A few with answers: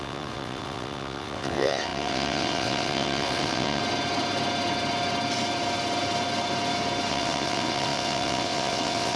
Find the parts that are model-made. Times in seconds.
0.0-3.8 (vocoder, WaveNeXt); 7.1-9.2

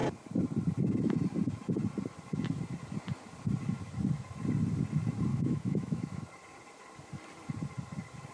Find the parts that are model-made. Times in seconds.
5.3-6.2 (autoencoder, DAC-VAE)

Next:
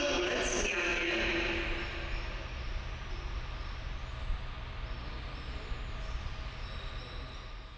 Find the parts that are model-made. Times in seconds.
none

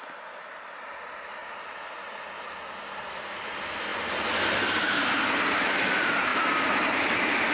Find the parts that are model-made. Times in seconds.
none

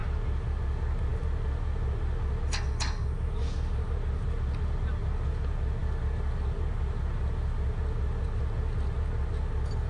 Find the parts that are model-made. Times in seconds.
none

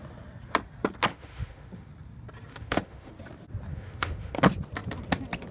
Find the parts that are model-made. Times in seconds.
1.1-1.9 (autoencoder, DAC-VAE); 2.5-3.1; 3.7-4.3